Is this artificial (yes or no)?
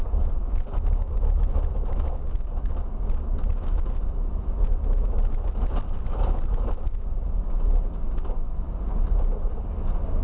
no